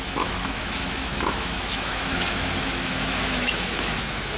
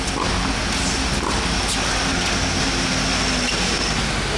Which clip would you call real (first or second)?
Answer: second